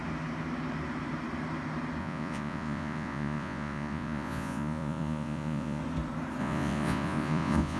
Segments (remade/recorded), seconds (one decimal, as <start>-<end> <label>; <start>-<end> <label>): 0.0-2.0 recorded; 2.0-5.8 remade; 5.8-6.4 recorded; 6.4-7.8 remade